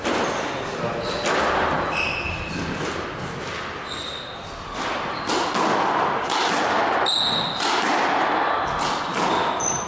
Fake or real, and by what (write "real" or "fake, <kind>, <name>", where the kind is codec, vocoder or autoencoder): real